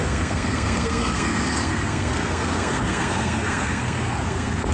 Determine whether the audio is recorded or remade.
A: remade